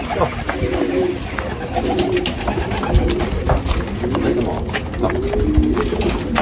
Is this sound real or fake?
real